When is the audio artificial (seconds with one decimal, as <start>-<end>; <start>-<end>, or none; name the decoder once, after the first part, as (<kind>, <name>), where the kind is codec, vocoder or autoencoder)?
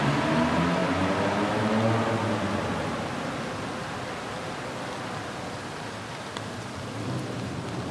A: none